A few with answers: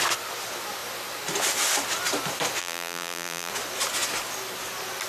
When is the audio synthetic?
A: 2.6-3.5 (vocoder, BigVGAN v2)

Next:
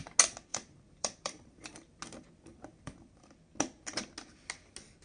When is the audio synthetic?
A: 0.5-2.0 (vocoder, BigVGAN v2); 2.7-3.3